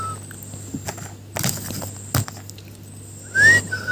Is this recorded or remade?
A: recorded